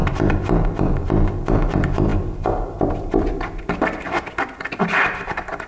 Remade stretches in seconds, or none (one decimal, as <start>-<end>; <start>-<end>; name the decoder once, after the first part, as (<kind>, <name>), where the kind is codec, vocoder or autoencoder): none